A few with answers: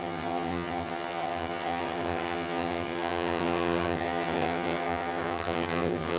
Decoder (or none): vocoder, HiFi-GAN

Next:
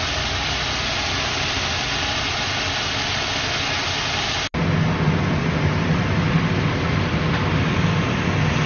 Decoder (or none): none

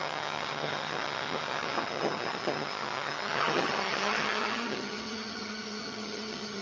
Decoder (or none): vocoder, HiFi-GAN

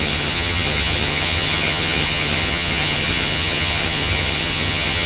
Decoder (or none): vocoder, HiFi-GAN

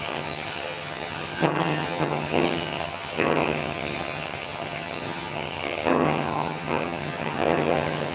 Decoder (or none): vocoder, HiFi-GAN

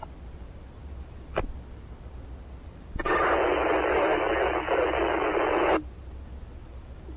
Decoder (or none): none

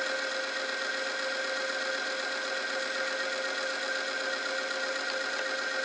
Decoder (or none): none